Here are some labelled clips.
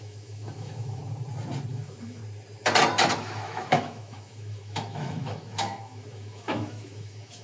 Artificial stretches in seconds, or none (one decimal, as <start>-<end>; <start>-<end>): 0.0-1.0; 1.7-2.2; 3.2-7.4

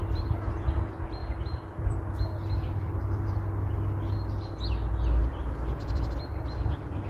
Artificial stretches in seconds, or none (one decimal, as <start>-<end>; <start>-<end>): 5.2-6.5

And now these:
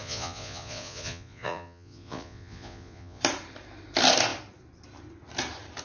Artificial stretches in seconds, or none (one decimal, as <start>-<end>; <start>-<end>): 0.0-3.2